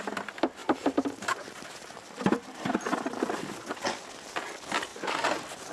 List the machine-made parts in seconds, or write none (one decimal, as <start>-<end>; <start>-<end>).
0.6-3.5; 4.9-5.7